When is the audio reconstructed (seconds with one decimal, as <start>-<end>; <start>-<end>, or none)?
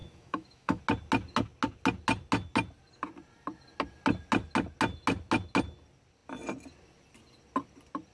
0.0-0.8